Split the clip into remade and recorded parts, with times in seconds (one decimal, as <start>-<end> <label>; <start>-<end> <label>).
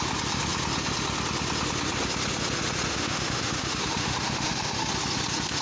0.0-2.9 recorded; 2.9-4.9 remade; 4.9-5.6 recorded